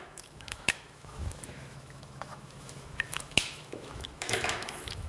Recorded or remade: remade